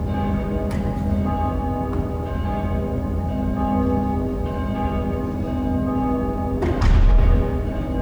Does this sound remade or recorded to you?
recorded